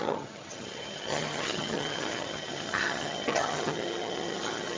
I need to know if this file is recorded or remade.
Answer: remade